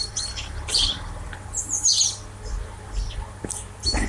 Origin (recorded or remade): remade